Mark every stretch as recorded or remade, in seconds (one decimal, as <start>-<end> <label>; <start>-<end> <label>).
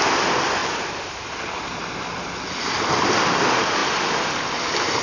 0.0-5.0 recorded